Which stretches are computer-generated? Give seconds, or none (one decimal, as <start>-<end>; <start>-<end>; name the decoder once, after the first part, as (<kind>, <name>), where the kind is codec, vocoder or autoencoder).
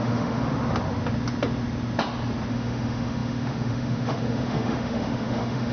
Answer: 0.0-0.5 (autoencoder, DAC-VAE); 2.5-5.7